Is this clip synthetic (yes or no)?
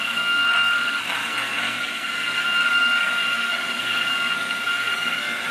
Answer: yes